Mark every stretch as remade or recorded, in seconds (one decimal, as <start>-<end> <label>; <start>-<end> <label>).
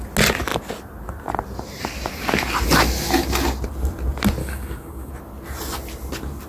0.0-4.4 recorded; 4.4-5.1 remade; 5.1-6.5 recorded